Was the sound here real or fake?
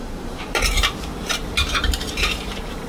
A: fake